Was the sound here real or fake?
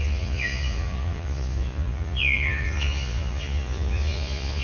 fake